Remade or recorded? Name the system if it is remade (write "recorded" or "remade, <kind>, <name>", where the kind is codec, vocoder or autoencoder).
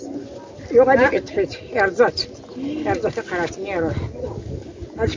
recorded